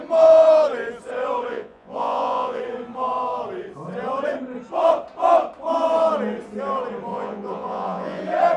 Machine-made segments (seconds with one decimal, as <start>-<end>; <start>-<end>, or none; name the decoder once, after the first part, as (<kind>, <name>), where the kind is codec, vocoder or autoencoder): 1.5-2.6 (vocoder, Vocos); 7.1-8.2